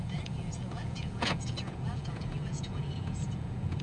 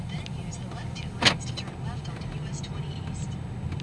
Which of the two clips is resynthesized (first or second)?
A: first